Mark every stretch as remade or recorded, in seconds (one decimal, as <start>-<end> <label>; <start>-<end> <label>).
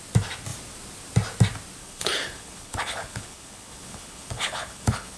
0.0-1.8 recorded; 1.8-5.2 remade